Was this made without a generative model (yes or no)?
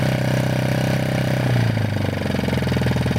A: yes